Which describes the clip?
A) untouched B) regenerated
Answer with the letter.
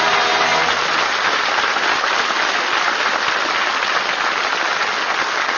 A